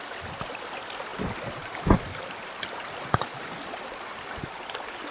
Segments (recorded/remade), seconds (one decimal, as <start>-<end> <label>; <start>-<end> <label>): 0.0-5.1 recorded